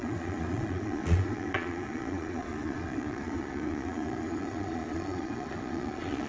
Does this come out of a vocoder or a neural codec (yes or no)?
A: yes